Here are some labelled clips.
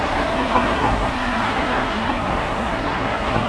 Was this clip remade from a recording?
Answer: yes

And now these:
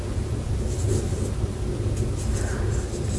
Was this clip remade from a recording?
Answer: no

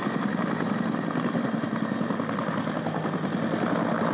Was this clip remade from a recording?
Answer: no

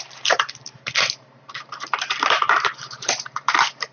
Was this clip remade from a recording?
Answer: yes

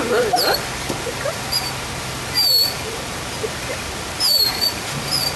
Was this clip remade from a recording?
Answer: yes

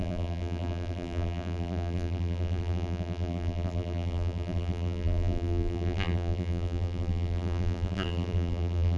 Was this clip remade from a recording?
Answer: yes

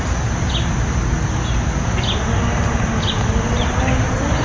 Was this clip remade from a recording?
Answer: no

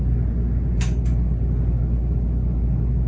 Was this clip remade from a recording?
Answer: no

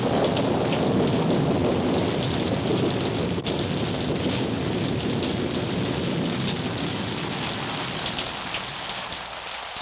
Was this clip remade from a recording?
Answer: no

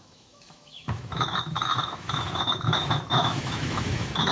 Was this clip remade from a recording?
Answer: yes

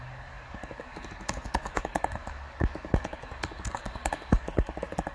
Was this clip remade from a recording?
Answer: yes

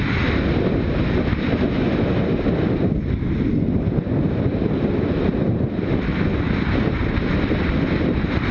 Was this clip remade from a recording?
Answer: no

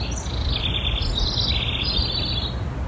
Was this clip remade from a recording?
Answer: no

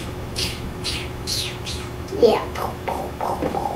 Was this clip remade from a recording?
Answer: yes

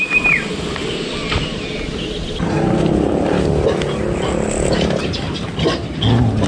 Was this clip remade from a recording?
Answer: no